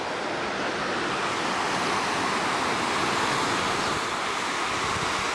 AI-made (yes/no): no